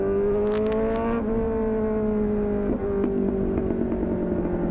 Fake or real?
real